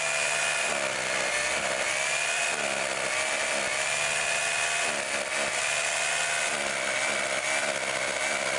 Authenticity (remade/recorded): recorded